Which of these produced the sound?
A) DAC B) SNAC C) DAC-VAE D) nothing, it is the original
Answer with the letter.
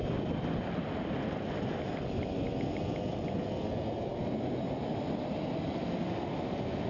D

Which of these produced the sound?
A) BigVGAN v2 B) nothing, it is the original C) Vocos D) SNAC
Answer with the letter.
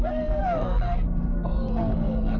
D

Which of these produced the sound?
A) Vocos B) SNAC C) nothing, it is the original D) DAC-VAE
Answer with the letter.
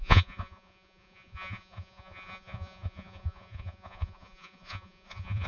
A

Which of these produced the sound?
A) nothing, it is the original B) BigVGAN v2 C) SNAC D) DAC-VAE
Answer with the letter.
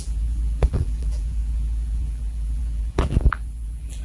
B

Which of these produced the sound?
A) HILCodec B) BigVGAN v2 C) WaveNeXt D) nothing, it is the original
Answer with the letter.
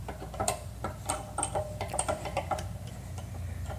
B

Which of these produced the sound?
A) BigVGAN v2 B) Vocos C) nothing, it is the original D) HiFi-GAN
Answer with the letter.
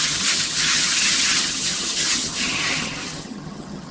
D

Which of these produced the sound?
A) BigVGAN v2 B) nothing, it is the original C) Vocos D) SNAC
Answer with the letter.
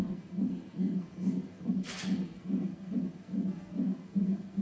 D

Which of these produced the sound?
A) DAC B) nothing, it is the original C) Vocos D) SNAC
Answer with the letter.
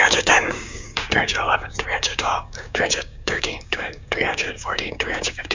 A